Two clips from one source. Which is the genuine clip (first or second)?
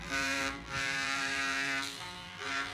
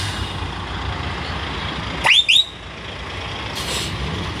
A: second